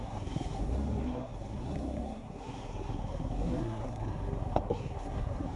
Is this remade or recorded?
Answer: remade